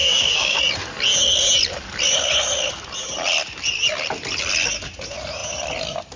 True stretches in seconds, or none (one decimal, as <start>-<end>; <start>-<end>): 0.6-6.2